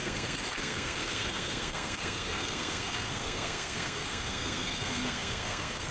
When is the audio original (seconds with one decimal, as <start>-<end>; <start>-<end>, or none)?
none